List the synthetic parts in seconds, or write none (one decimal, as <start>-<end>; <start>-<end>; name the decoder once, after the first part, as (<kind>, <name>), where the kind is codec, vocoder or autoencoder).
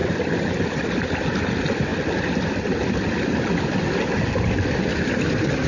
none